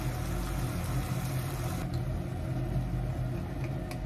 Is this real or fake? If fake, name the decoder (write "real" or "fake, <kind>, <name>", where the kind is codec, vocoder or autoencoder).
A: real